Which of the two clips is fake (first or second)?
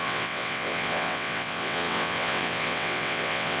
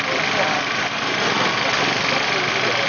first